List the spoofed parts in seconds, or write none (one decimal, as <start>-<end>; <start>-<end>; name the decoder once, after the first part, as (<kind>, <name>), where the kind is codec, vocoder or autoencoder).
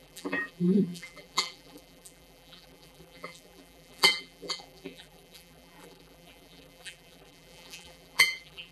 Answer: 0.0-8.7 (vocoder, BigVGAN v2)